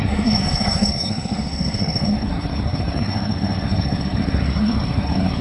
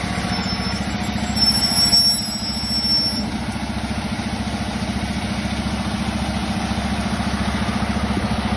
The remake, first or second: first